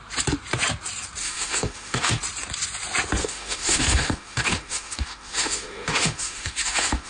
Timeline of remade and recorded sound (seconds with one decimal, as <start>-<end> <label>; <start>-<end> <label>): 0.0-1.2 recorded; 1.2-2.2 remade; 2.2-3.2 recorded; 3.2-7.1 remade